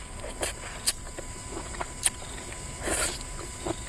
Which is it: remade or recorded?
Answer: recorded